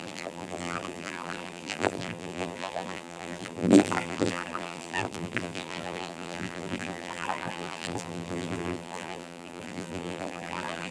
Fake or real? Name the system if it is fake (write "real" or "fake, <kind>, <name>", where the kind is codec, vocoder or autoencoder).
fake, vocoder, BigVGAN v2